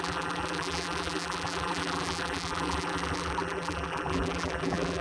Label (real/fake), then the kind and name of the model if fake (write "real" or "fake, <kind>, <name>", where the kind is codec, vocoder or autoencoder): fake, vocoder, BigVGAN v2